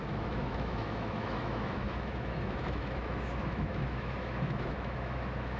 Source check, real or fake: fake